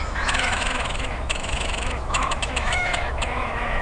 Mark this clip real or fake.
fake